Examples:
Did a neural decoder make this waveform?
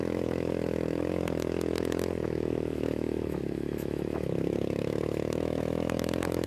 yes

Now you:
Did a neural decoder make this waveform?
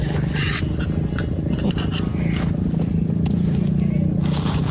no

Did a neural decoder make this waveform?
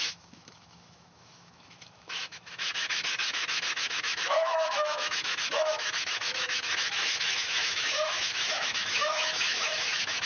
yes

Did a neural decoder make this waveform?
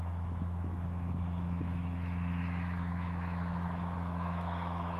yes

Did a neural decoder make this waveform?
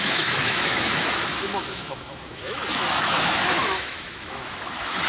yes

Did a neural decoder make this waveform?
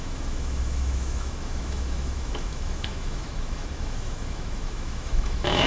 yes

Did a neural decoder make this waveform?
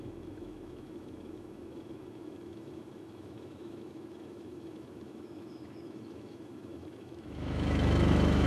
yes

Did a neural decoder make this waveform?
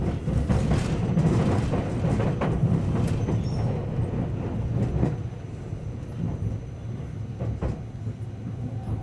no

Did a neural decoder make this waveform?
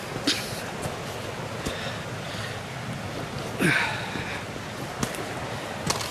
no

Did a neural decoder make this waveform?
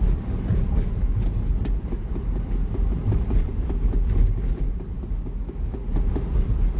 no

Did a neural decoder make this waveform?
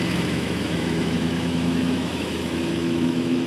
yes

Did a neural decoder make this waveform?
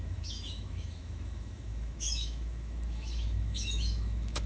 yes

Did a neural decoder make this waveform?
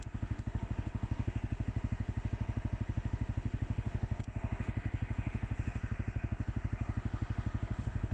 yes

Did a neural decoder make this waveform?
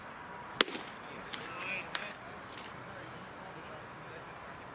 no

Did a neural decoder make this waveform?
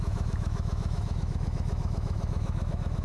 yes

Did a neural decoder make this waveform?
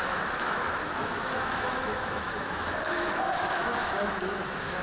yes